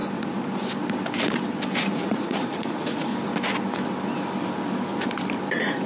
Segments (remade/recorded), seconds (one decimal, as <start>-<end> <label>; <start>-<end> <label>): 0.0-1.9 recorded; 1.9-3.1 remade; 3.1-5.5 recorded; 5.5-5.9 remade